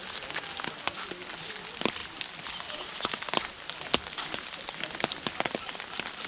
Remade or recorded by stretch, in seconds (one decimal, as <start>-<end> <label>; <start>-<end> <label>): 0.0-6.3 recorded